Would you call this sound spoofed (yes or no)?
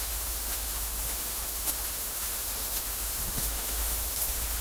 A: yes